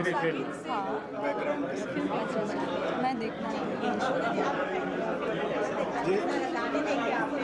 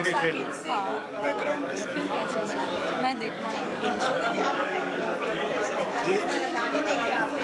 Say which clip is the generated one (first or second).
second